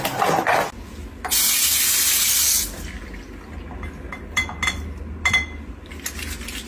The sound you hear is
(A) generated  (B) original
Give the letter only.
B